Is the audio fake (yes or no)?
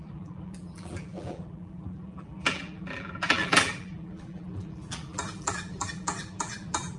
yes